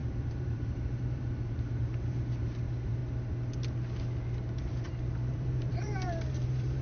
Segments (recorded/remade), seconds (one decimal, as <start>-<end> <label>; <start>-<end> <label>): 0.0-3.0 remade; 3.0-4.6 recorded; 4.6-6.8 remade